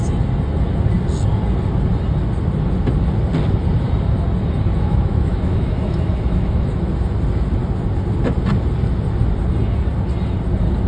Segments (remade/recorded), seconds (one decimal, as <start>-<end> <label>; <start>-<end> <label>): 0.0-4.7 recorded; 4.7-6.9 remade; 6.9-10.9 recorded